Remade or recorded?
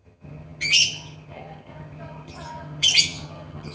remade